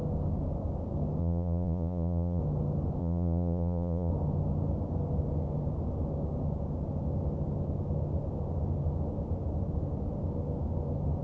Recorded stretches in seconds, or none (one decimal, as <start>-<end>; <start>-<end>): 0.0-1.2; 2.4-3.0; 4.1-11.2